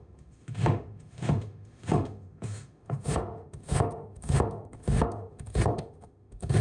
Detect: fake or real fake